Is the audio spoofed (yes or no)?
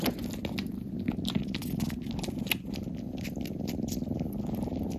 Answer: no